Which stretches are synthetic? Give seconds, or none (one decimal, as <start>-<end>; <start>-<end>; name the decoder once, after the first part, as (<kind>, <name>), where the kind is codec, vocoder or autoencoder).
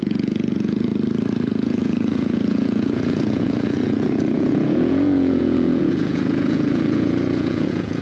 0.0-0.9 (vocoder, Vocos); 1.5-8.0